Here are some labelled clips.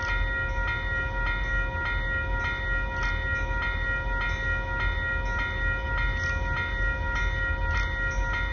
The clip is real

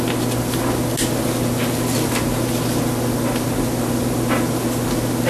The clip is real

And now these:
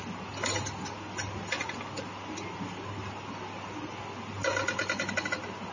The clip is real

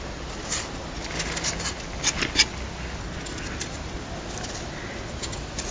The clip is real